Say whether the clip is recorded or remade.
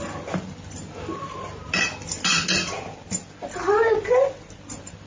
recorded